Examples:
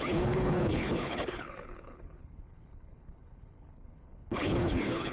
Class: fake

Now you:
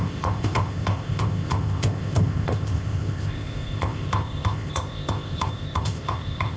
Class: fake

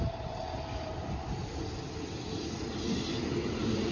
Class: real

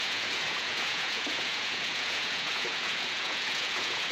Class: fake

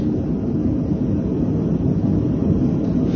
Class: real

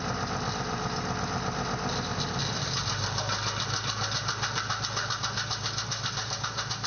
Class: real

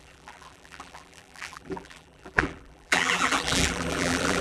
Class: fake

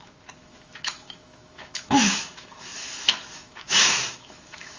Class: fake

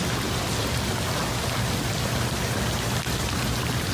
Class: real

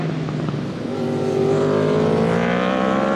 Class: real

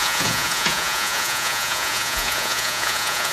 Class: fake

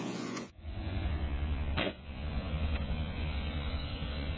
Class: fake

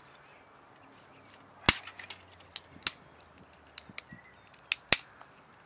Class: real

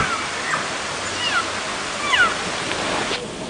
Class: real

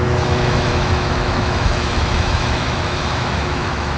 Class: fake